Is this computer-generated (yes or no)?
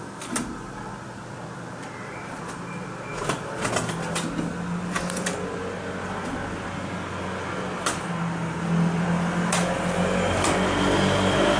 no